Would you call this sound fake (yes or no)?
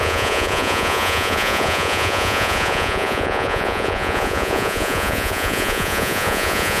yes